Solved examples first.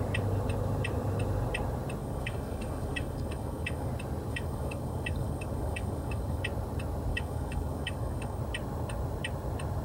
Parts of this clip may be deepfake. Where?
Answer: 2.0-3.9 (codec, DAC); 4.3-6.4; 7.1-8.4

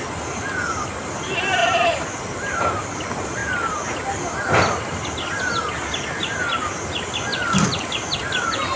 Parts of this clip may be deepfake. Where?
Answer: none

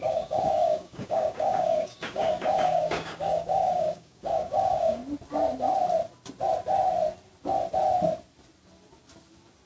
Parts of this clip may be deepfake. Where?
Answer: 0.0-5.0 (codec, DAC)